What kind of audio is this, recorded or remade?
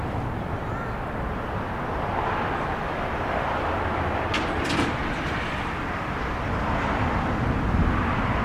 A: remade